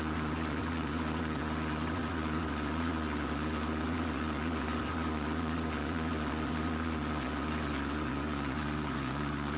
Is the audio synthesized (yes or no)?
yes